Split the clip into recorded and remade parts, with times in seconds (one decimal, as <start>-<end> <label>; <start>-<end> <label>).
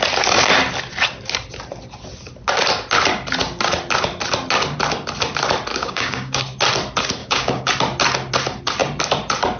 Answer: 0.0-5.7 recorded; 5.7-6.4 remade; 6.4-7.2 recorded; 7.2-7.7 remade; 7.7-9.6 recorded